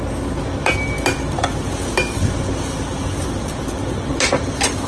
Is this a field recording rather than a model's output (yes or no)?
yes